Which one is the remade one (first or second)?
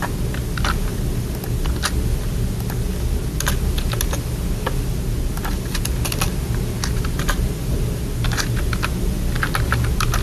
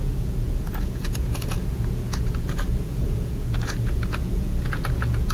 second